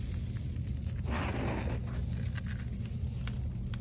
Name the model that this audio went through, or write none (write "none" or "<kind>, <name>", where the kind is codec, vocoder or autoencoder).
none